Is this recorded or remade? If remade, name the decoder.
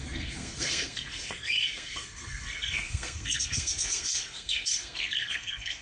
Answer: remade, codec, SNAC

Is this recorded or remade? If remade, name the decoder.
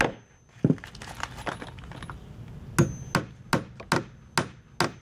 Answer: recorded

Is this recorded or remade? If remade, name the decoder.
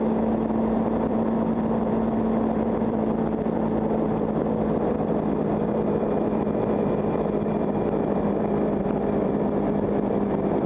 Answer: remade, vocoder, BigVGAN v2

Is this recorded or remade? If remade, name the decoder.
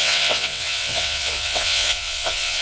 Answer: remade, vocoder, WaveNeXt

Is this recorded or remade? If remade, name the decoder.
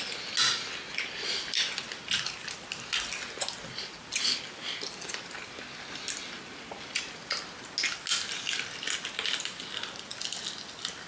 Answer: recorded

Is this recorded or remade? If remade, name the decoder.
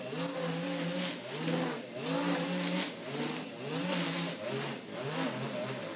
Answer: recorded